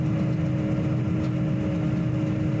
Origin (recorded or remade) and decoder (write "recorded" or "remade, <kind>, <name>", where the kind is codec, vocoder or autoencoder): recorded